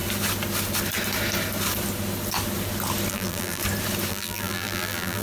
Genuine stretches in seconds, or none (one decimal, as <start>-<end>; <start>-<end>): 0.0-3.1; 3.6-4.1